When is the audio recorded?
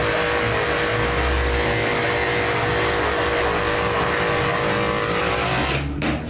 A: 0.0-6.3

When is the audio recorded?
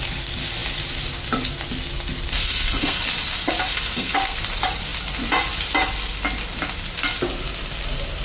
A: 0.0-2.4; 3.0-3.7; 4.4-8.2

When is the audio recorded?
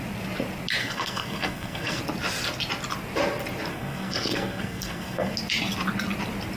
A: 0.0-0.8; 2.0-3.7; 5.3-6.6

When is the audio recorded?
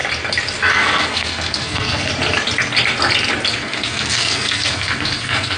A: 0.0-0.7; 2.1-3.5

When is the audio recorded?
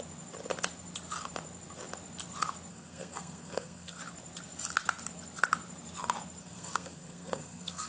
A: 0.0-2.7; 4.0-6.4